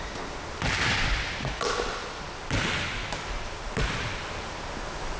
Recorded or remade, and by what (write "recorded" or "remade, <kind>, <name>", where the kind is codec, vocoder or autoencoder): recorded